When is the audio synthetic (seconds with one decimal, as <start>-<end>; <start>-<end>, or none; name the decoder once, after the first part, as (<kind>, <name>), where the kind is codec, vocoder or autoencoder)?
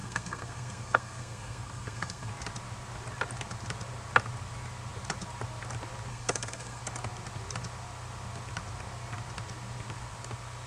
0.0-2.3 (codec, SNAC); 6.1-6.8